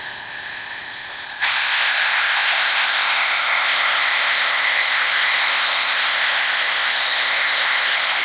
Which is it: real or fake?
fake